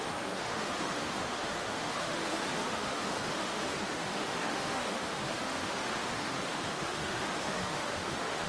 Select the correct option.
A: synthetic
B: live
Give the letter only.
A